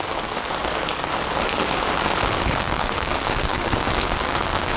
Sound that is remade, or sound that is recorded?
remade